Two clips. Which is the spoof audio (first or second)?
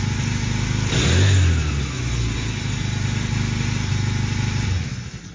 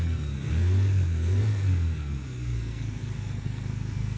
second